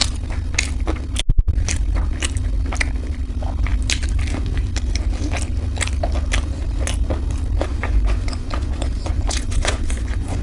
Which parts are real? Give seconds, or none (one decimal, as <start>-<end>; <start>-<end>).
0.0-7.7